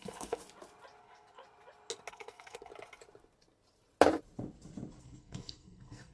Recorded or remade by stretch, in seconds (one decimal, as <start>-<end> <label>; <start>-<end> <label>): 0.0-0.4 remade; 0.4-1.0 recorded; 1.0-1.4 remade; 1.4-2.1 recorded; 2.1-2.7 remade; 2.7-5.0 recorded; 5.0-6.1 remade